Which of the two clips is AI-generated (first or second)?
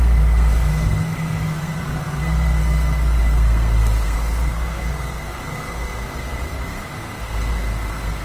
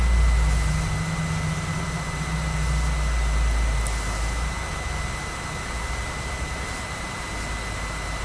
first